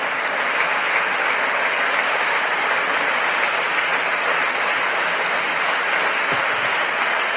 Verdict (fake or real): real